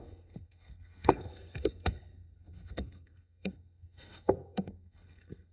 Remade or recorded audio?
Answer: remade